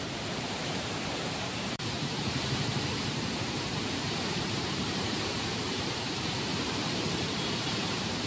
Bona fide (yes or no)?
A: no